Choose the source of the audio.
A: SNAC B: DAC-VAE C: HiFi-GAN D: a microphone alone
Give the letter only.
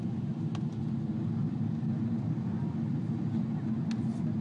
D